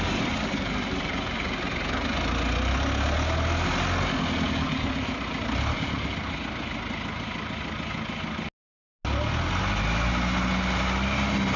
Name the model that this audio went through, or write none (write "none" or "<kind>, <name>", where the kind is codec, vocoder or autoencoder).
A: none